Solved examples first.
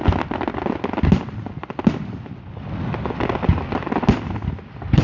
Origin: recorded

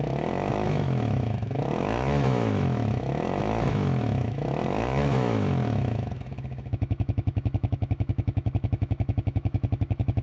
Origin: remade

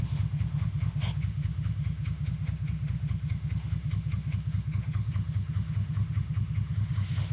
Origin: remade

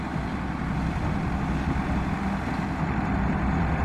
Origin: recorded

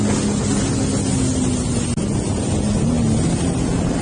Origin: recorded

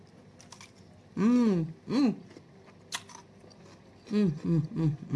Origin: recorded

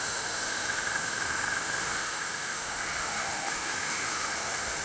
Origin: remade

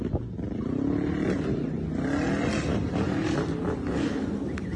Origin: recorded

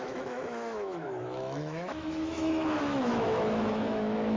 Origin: remade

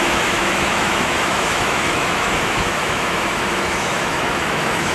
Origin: remade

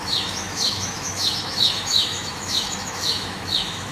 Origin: remade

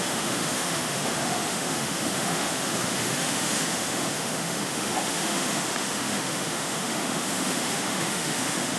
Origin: remade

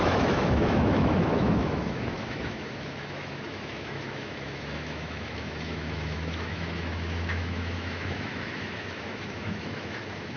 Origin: remade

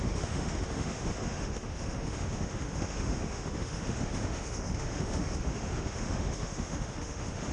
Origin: remade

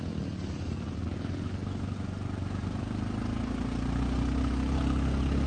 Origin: recorded